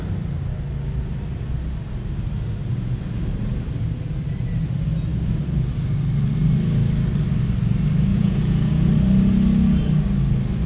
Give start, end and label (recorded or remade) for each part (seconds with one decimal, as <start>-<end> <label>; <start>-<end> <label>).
0.0-8.1 recorded; 8.1-8.9 remade; 8.9-10.7 recorded